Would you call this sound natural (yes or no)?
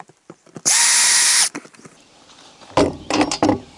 no